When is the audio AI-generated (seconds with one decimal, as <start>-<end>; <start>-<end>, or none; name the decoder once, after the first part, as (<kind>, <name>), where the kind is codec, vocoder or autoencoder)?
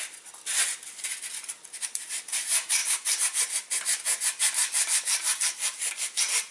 none